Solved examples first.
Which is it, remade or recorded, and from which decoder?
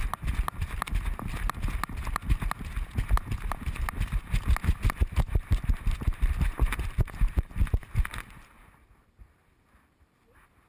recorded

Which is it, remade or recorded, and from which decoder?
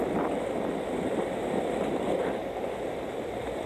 recorded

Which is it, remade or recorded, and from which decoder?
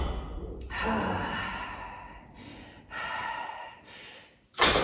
recorded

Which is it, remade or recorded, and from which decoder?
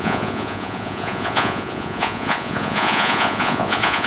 remade, vocoder, Vocos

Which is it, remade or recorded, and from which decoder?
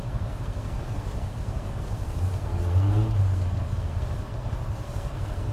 remade, codec, SNAC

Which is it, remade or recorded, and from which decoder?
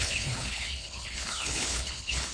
remade, codec, HILCodec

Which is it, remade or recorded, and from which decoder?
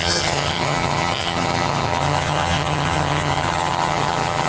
remade, vocoder, HiFi-GAN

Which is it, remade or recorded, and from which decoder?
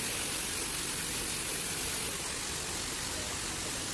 recorded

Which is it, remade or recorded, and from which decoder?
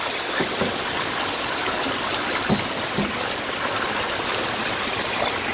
recorded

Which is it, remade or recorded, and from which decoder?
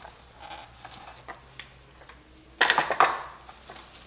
recorded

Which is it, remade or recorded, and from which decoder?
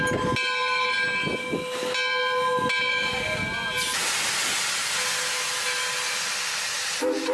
recorded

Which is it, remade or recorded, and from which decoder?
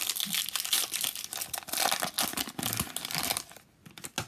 recorded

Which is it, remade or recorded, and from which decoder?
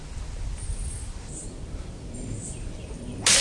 recorded